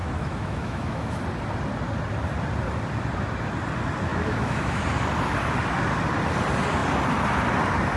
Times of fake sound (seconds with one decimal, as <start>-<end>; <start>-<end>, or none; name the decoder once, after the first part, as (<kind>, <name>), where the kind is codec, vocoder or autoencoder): 0.0-1.2 (autoencoder, DAC-VAE); 4.1-4.8